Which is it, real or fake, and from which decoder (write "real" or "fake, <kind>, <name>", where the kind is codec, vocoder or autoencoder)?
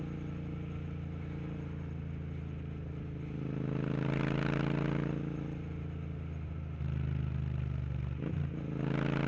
real